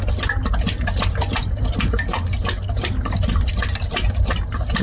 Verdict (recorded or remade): recorded